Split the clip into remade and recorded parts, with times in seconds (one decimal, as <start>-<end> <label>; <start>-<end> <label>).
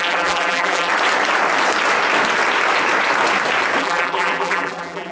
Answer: 0.0-0.9 remade; 0.9-3.8 recorded; 3.8-5.1 remade